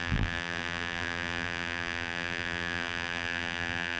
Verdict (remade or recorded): remade